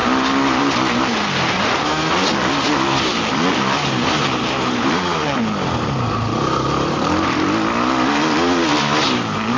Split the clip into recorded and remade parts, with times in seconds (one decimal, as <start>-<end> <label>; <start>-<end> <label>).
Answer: 0.0-9.6 recorded